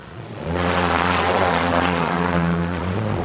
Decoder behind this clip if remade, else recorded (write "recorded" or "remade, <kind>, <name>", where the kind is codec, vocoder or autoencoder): remade, vocoder, Vocos